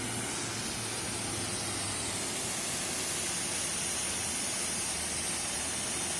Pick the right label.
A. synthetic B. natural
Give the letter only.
B